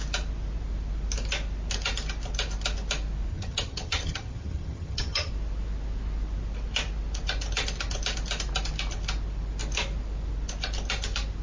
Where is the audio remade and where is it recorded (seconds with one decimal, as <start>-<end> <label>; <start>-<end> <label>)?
0.0-3.3 recorded; 3.3-5.3 remade; 5.3-11.4 recorded